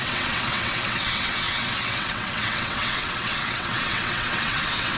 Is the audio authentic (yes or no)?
no